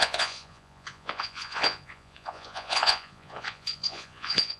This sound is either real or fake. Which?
fake